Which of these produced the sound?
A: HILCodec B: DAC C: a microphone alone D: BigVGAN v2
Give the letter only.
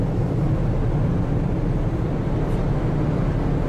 C